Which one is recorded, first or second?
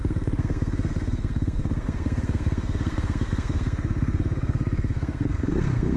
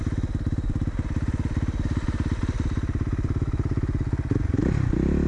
second